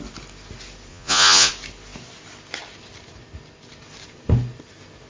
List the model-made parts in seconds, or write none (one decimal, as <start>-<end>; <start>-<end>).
0.9-1.5